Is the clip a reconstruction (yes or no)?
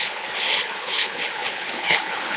yes